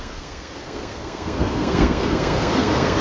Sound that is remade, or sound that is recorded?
remade